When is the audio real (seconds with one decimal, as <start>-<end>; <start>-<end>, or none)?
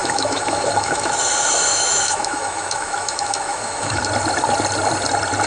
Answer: 1.2-1.7; 4.0-5.5